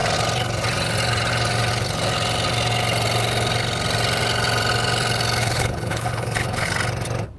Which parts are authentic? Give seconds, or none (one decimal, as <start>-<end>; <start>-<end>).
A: 0.0-5.4; 6.7-7.4